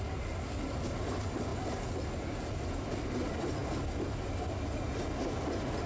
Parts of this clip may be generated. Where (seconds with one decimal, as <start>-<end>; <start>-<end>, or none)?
none